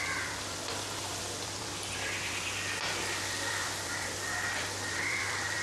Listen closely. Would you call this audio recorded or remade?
remade